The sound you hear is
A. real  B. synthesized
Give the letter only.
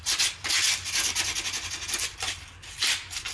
A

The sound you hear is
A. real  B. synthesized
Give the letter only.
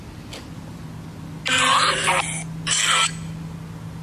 A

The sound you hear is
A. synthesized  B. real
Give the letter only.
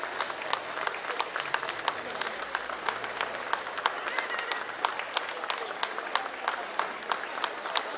B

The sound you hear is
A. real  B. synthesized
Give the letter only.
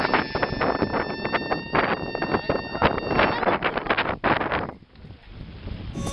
A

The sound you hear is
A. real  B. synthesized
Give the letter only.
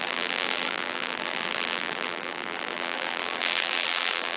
B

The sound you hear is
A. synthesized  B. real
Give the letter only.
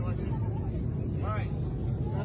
B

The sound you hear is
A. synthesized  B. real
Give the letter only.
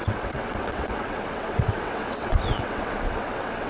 A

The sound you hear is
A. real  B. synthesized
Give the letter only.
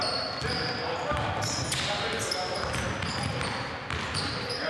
A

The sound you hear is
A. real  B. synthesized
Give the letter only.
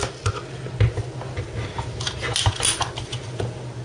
A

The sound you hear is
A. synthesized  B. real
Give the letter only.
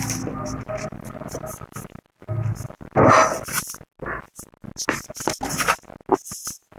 B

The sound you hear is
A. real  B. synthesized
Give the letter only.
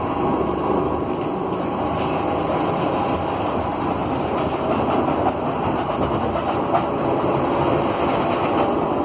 A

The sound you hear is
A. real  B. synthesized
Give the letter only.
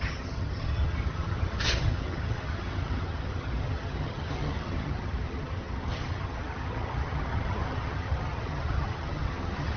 B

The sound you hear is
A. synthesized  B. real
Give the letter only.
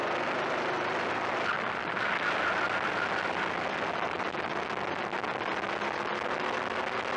B